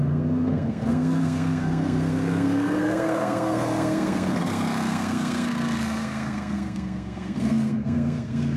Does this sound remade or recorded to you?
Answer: remade